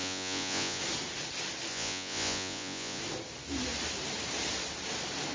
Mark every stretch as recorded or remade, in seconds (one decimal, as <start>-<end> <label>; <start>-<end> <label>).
0.0-0.8 remade; 0.8-1.7 recorded; 1.7-3.0 remade; 3.0-5.3 recorded